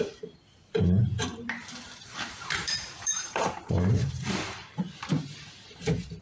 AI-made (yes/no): yes